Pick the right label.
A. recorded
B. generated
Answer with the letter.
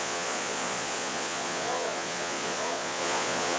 B